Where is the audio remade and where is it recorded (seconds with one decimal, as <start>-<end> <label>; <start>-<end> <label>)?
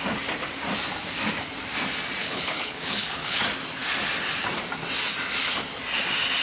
0.0-2.2 recorded; 2.2-3.4 remade; 3.4-6.4 recorded